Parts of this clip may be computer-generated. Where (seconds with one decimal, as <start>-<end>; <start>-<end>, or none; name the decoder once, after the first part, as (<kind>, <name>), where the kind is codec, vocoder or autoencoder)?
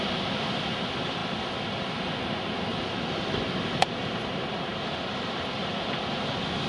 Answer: 0.0-6.7 (vocoder, BigVGAN v2)